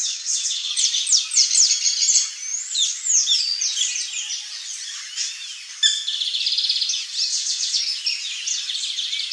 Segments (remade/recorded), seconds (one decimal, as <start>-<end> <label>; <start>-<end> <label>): 0.0-0.7 remade; 0.7-7.3 recorded; 7.3-7.8 remade; 7.8-9.3 recorded